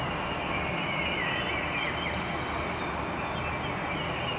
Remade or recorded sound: recorded